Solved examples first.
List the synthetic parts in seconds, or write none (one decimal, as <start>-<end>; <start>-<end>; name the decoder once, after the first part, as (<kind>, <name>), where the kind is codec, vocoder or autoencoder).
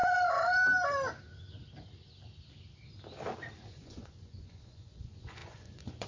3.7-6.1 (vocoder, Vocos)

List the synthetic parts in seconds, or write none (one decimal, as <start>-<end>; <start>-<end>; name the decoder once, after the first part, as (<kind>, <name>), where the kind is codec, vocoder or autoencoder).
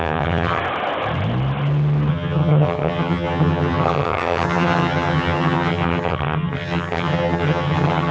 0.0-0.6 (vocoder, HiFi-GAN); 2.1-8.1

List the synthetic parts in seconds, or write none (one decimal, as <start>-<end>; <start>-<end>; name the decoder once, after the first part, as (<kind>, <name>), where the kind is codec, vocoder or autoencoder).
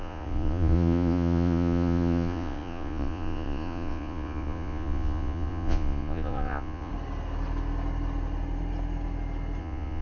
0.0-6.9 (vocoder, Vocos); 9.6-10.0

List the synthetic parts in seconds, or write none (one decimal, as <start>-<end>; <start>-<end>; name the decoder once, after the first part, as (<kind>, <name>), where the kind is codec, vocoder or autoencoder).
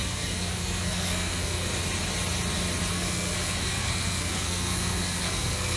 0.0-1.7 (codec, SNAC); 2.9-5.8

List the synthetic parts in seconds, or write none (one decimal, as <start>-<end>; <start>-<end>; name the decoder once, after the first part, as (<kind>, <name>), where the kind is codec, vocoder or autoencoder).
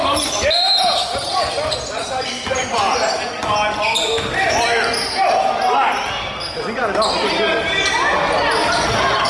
0.0-2.3 (vocoder, BigVGAN v2)